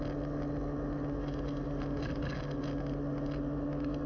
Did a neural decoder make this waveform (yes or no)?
no